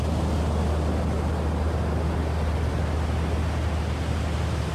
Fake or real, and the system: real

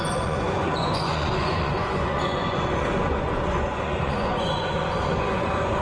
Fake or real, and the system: fake, vocoder, Vocos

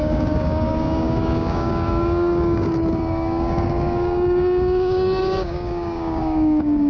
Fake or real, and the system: fake, codec, DAC